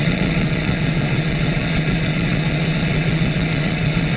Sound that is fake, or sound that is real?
fake